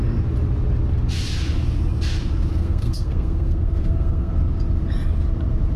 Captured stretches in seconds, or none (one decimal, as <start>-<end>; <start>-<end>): 0.0-2.5; 4.3-5.8